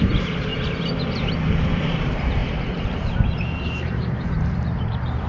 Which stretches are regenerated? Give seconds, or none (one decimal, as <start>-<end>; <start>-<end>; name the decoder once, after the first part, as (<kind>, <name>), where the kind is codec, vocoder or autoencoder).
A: 0.0-0.5 (vocoder, BigVGAN v2); 1.4-5.3